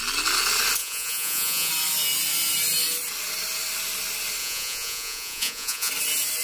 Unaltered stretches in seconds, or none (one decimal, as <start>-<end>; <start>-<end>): 0.0-0.8; 1.7-4.4; 5.9-6.4